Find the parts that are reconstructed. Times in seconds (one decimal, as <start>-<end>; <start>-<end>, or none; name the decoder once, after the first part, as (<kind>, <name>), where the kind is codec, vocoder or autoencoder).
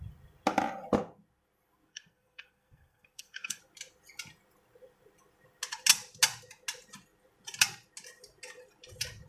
1.9-3.6 (codec, SNAC)